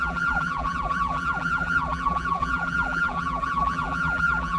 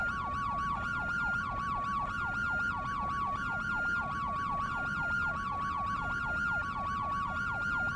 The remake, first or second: first